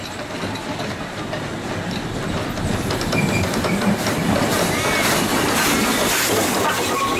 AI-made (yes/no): no